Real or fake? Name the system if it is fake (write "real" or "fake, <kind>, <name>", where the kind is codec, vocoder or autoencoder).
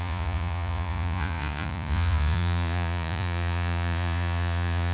fake, vocoder, Vocos